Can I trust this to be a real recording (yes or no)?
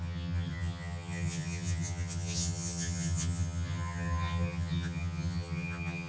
no